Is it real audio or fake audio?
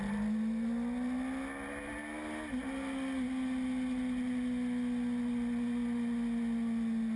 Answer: real